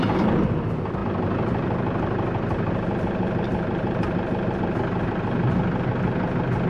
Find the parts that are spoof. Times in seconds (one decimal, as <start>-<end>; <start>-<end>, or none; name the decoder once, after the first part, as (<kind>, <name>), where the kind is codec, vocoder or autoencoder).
none